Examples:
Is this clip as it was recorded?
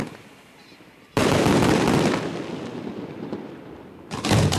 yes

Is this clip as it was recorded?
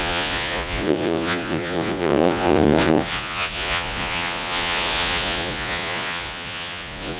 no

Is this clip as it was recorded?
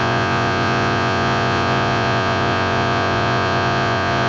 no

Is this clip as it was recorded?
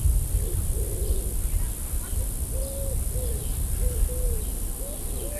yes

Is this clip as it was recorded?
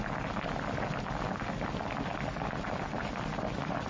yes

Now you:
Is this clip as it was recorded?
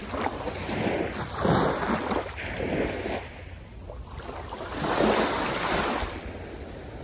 yes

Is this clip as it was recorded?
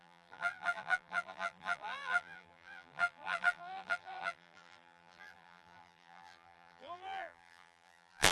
no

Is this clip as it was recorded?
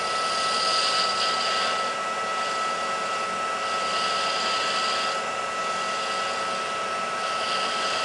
yes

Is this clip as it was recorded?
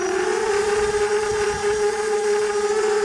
no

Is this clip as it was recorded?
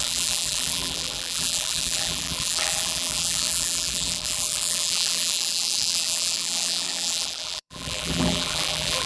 no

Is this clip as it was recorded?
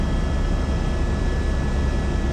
yes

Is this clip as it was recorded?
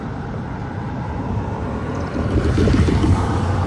no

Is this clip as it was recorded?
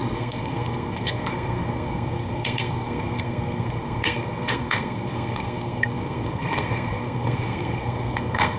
no